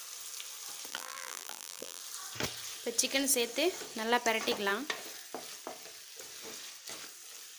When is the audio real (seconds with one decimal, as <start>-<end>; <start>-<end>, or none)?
0.0-0.9; 2.0-7.6